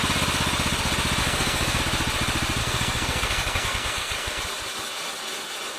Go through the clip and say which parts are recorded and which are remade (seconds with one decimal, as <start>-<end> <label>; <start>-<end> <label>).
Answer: 0.0-1.2 recorded; 1.2-1.8 remade; 1.8-2.6 recorded; 2.6-4.4 remade; 4.4-5.8 recorded